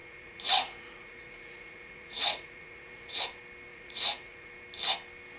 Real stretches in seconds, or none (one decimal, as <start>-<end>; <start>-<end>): 3.2-3.7; 4.5-5.4